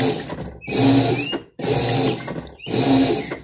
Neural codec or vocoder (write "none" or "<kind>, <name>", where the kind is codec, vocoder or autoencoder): none